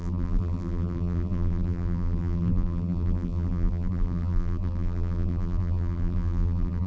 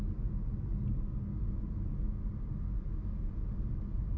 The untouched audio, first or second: second